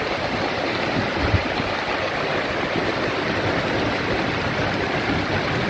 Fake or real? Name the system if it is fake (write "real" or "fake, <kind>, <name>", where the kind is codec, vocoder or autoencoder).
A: real